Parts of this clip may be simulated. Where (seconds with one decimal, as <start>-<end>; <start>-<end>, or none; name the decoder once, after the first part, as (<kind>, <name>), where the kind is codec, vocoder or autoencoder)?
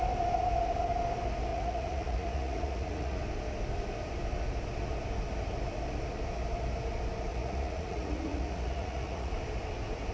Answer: 1.5-3.2 (vocoder, Vocos); 7.3-9.3